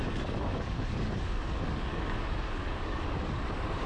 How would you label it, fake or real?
fake